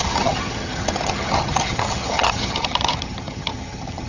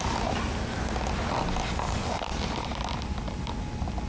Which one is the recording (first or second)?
second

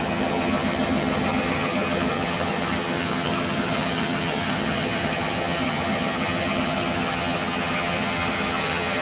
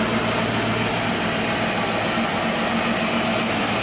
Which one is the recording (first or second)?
second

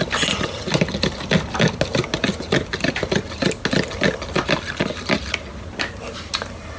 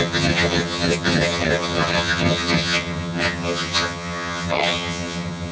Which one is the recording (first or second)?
first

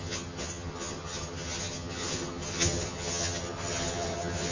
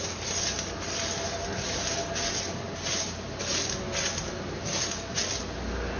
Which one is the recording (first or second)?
second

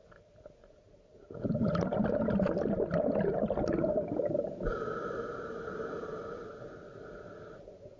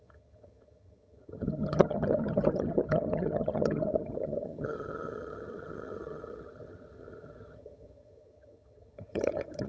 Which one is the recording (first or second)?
first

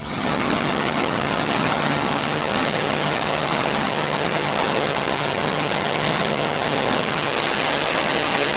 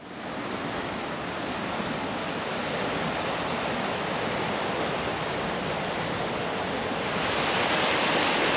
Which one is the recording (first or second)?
second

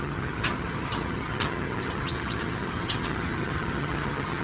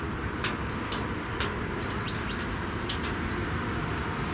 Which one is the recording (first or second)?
second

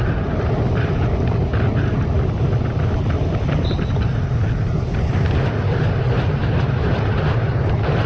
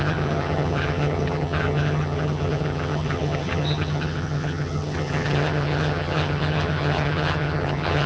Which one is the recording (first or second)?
first